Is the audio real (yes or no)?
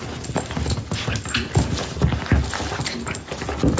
yes